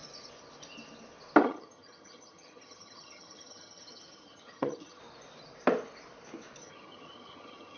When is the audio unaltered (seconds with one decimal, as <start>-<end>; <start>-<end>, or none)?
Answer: 0.0-1.4; 5.0-6.6